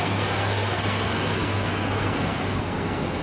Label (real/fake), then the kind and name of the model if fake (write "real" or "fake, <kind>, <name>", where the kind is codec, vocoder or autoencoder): fake, codec, SNAC